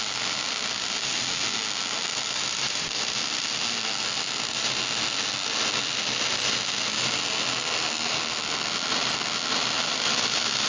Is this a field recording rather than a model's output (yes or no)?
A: yes